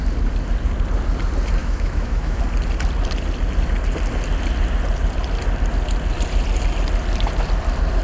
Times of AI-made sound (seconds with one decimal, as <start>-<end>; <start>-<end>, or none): 1.6-2.4